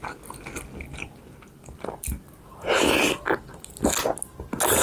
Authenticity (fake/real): real